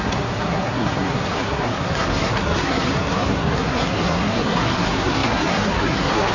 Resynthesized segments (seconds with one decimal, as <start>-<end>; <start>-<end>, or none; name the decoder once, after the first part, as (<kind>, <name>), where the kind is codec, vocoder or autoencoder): 0.0-6.3 (codec, SNAC)

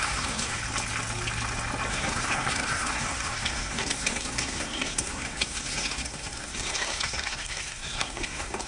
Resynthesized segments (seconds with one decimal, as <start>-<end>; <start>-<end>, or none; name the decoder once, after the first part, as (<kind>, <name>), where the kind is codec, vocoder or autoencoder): 0.0-0.6 (codec, SNAC); 1.9-8.7

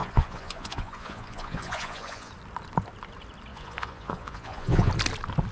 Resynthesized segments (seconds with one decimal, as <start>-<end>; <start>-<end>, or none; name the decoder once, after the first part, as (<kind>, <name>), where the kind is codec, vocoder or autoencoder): 0.0-2.3 (vocoder, Vocos); 3.5-4.9

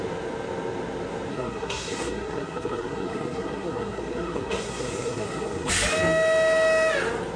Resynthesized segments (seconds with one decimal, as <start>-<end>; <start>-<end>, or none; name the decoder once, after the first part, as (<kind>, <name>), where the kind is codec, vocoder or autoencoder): 1.3-5.7 (codec, SNAC)

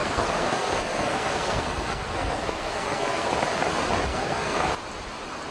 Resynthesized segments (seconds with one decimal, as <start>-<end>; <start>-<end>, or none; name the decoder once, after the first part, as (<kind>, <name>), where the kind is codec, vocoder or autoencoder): 0.0-3.3 (codec, SNAC); 4.1-4.7